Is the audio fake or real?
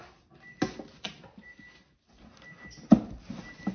real